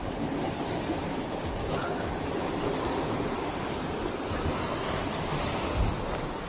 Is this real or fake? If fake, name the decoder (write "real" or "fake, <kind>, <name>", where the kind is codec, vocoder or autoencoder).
real